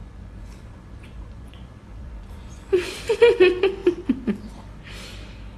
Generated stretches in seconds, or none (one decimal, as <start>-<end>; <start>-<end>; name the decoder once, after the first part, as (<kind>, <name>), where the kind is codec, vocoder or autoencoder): 0.0-3.0 (vocoder, Vocos)